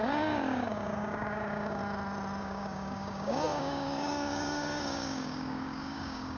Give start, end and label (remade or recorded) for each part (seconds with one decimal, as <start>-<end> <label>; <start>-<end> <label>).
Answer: 0.0-1.8 remade; 1.8-2.4 recorded; 2.4-6.4 remade

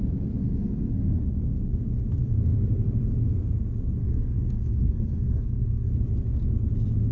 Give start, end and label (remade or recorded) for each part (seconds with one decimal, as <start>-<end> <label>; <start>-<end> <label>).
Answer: 0.0-0.4 recorded; 0.4-1.2 remade; 1.2-4.0 recorded; 4.0-5.9 remade; 5.9-7.1 recorded